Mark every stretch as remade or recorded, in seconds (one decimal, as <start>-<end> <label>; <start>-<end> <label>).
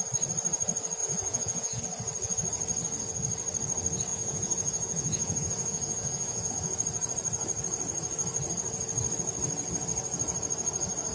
0.0-1.0 recorded; 1.0-1.8 remade; 1.8-4.1 recorded; 4.1-6.5 remade; 6.5-11.1 recorded